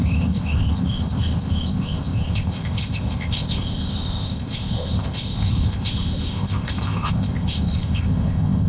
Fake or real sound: fake